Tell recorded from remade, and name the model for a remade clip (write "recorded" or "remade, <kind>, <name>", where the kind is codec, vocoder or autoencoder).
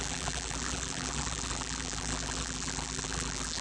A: remade, vocoder, BigVGAN v2